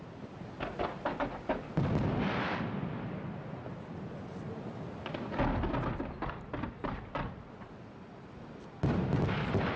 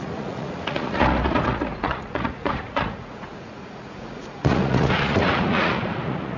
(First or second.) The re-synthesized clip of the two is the second